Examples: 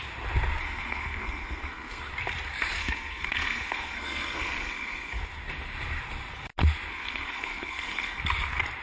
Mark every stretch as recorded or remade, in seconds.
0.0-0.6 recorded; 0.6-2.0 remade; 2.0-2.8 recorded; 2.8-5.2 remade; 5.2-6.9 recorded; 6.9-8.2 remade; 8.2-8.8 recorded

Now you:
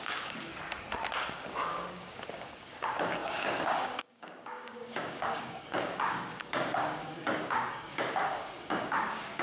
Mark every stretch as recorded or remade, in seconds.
0.0-0.5 remade; 0.5-1.3 recorded; 1.3-9.4 remade